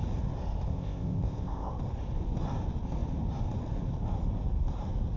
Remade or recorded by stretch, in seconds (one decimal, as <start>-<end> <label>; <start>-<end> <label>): 0.0-0.7 recorded; 0.7-1.7 remade; 1.7-5.2 recorded